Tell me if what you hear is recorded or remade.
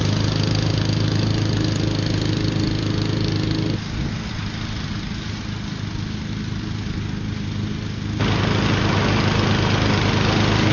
recorded